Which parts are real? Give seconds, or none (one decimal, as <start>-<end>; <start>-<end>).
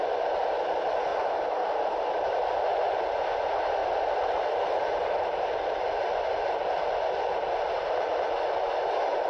0.0-1.1; 2.2-3.8; 8.9-9.3